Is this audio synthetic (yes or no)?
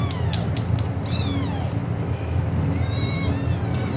no